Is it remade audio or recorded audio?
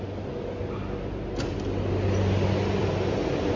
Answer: recorded